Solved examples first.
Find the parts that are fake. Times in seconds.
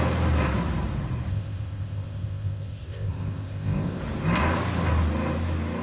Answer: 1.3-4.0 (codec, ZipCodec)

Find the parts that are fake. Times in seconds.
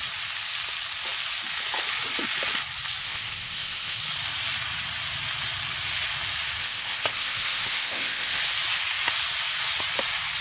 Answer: 3.0-4.0 (codec, ZipCodec); 6.6-8.4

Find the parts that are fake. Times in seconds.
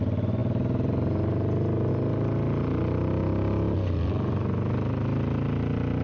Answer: none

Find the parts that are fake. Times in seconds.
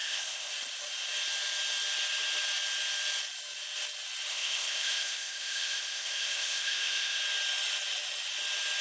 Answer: 0.0-0.5 (codec, ZipCodec); 4.3-7.2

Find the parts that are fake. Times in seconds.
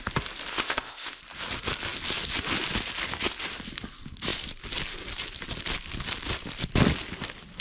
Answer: 0.5-1.2 (codec, ZipCodec)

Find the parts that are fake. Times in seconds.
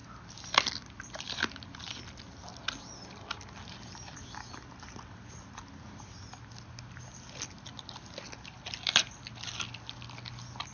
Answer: none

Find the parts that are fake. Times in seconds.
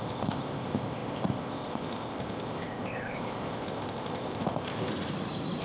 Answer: 0.0-4.9 (codec, ZipCodec)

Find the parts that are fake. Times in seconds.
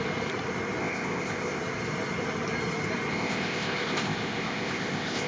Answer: 0.8-1.6 (codec, ZipCodec); 3.1-5.3